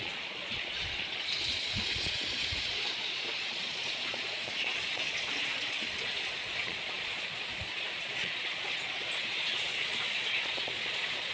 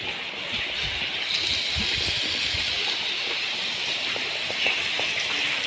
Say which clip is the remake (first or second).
first